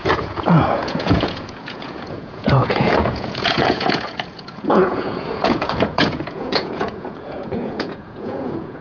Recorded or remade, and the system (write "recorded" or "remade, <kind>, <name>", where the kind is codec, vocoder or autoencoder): remade, vocoder, Vocos